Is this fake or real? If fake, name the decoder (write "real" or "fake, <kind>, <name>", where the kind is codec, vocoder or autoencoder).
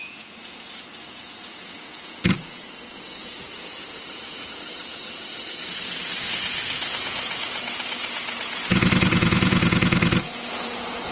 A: fake, vocoder, Vocos